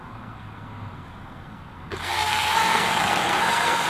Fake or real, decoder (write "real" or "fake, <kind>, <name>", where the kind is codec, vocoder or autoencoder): fake, codec, SNAC